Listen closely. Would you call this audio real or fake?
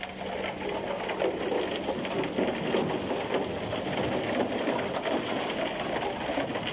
real